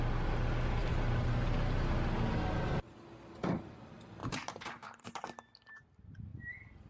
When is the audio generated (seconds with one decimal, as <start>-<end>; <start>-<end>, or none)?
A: 0.8-1.5; 4.2-5.1